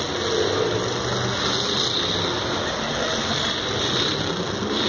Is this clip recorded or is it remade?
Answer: recorded